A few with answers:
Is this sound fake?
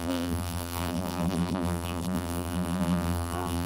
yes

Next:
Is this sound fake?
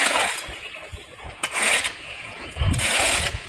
yes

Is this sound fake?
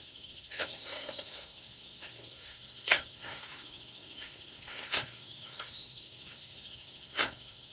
yes